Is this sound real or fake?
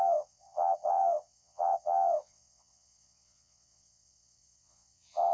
fake